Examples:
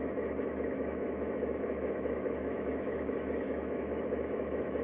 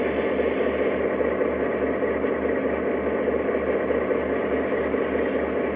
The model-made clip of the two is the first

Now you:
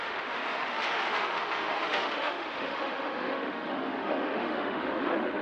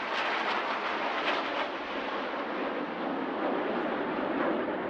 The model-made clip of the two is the first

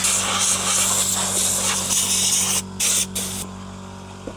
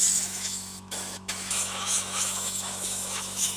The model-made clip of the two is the second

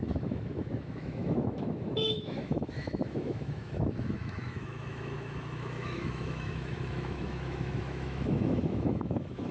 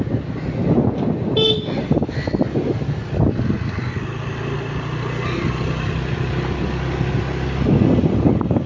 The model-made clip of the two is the first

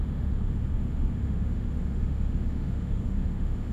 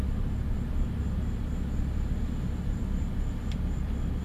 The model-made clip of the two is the first